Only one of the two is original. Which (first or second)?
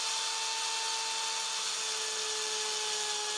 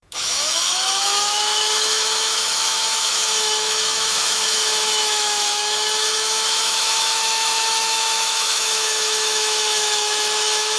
first